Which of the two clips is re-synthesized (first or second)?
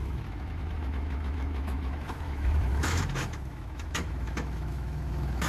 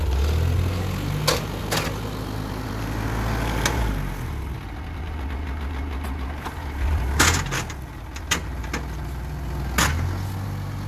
first